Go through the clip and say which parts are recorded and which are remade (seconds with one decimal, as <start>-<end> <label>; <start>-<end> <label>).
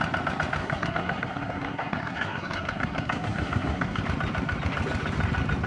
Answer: 0.0-0.6 recorded; 0.6-4.0 remade; 4.0-5.7 recorded